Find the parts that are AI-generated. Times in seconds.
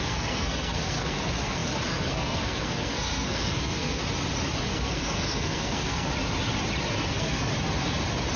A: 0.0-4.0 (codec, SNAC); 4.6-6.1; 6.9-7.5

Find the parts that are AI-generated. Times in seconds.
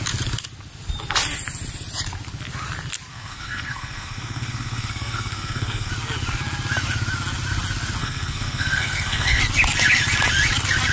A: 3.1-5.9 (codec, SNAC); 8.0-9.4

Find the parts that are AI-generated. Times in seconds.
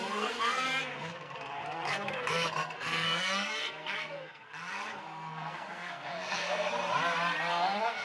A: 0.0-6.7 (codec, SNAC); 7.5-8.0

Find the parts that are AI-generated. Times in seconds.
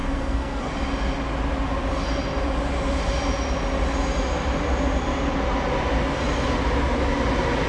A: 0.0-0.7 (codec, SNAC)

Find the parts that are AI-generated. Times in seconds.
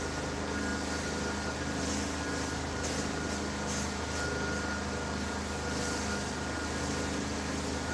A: none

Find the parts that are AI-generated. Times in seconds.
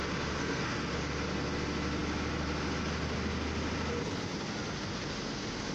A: 0.4-0.9 (codec, SNAC)